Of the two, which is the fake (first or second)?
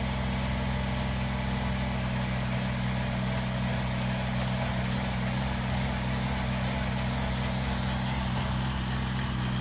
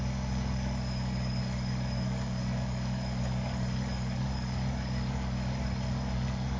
second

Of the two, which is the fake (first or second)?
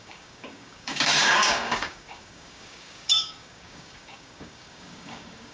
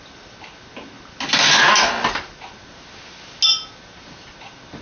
first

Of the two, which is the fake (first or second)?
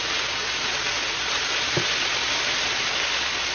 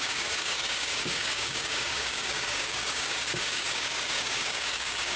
second